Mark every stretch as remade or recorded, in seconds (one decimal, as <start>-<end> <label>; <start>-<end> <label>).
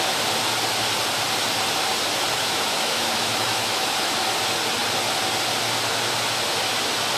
0.0-2.4 recorded; 2.4-4.3 remade; 4.3-7.2 recorded